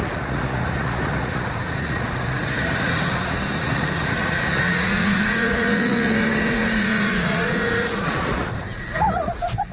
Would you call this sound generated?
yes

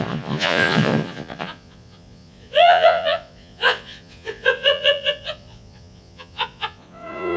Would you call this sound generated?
yes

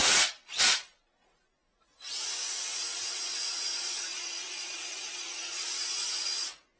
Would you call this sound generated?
yes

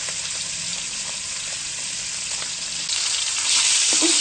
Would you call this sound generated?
no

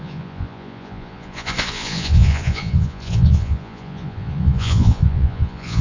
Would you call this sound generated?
yes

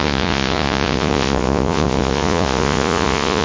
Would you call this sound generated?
yes